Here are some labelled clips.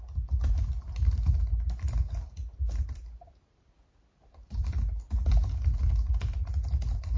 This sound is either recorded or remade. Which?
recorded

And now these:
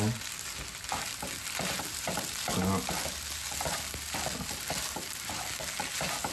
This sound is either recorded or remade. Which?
recorded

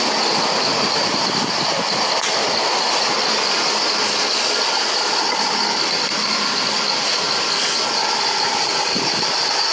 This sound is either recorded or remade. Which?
recorded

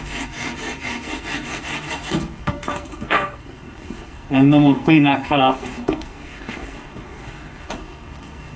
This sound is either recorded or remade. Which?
remade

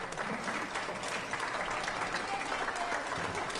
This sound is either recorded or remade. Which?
recorded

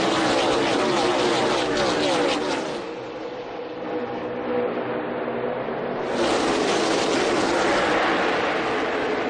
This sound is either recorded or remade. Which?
recorded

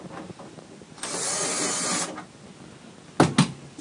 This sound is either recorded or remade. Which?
recorded